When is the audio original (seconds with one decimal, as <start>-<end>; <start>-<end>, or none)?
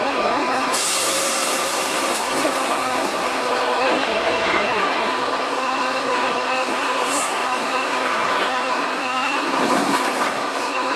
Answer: none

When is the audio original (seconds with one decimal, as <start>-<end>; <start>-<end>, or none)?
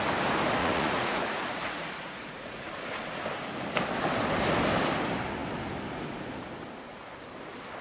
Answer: 0.0-0.6; 2.7-7.8